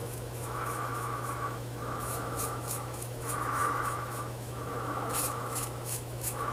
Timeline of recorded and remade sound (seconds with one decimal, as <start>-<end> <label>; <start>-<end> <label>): 0.0-6.5 remade